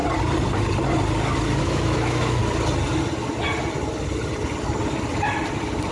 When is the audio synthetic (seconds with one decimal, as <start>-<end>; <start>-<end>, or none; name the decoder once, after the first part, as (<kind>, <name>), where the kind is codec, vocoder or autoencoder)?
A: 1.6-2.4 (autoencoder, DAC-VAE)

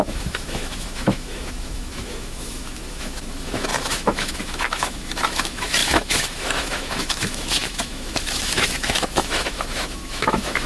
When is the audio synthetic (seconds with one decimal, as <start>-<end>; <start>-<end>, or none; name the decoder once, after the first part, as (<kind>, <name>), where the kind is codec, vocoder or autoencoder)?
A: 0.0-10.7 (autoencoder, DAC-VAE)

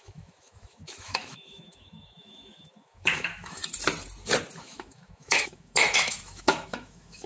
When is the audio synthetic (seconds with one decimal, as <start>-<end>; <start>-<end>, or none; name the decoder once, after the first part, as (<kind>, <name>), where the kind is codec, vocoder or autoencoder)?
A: 0.0-3.6 (autoencoder, DAC-VAE); 4.6-7.3

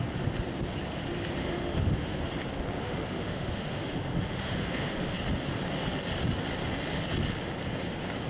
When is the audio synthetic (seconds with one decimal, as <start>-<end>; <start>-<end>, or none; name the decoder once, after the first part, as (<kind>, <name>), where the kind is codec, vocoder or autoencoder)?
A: 1.4-2.2 (autoencoder, DAC-VAE); 2.8-5.0

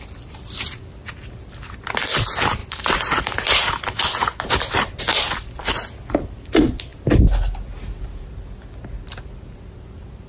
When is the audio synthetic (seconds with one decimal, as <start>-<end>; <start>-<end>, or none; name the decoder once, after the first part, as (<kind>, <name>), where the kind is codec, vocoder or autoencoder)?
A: none

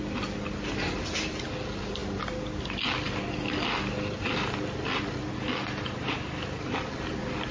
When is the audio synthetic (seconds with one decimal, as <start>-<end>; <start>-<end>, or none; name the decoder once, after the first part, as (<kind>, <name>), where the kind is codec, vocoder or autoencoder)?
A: none

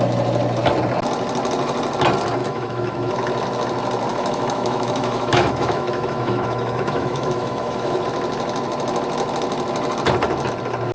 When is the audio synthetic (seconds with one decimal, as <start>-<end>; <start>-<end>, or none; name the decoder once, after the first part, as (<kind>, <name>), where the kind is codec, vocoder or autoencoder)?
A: 2.4-3.1 (autoencoder, DAC-VAE); 4.1-8.0